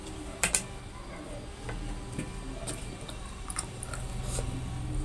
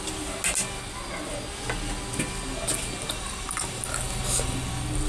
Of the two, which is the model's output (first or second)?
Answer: first